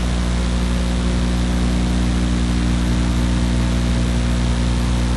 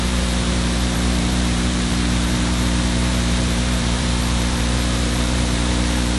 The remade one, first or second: second